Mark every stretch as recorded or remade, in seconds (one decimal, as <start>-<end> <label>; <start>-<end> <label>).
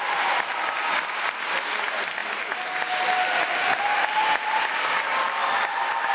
0.0-6.1 recorded